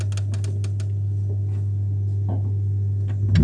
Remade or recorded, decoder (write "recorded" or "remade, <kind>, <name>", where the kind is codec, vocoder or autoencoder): recorded